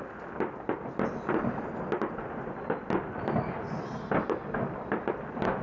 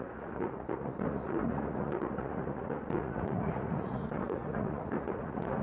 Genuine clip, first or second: first